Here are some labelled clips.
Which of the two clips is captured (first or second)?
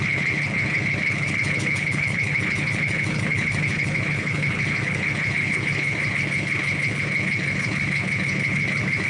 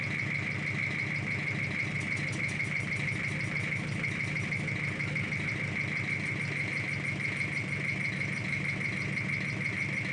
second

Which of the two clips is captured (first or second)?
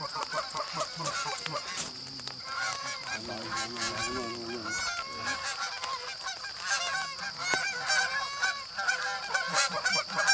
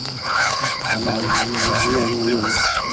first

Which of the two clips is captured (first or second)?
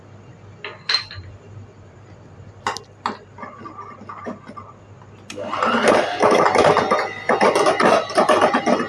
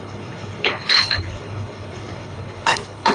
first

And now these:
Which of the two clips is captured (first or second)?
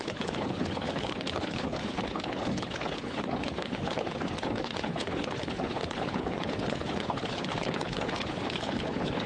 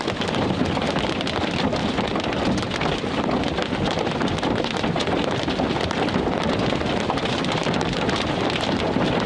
second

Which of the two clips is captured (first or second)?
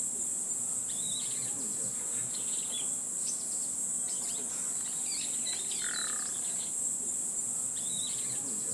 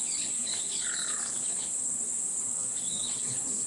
first